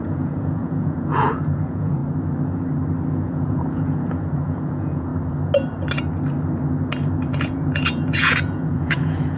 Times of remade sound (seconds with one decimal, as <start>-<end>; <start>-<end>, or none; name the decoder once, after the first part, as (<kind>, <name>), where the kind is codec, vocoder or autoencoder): 0.0-2.0 (vocoder, Vocos); 3.1-5.1; 7.3-9.4